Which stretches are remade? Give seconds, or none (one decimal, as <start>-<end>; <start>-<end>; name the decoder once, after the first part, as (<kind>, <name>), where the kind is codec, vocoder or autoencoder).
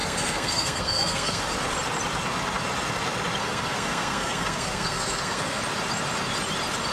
0.0-1.4 (codec, SNAC); 3.4-5.6